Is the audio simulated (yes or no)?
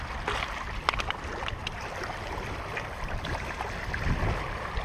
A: no